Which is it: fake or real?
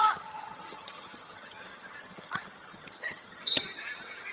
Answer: fake